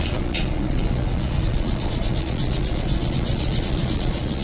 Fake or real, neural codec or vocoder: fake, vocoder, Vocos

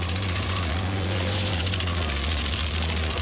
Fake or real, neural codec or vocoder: fake, vocoder, Vocos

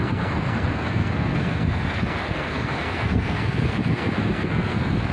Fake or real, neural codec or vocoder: fake, codec, SNAC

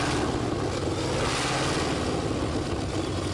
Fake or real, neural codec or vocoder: real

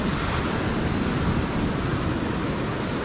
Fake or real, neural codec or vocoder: real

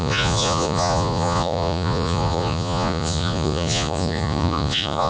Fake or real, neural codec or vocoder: fake, vocoder, Vocos